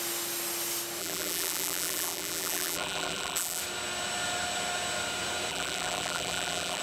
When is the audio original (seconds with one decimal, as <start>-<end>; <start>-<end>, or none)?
0.0-1.0; 3.6-5.5